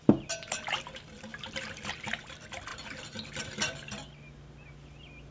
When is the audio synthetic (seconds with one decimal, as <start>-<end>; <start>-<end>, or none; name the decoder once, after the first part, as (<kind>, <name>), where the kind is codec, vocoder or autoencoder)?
none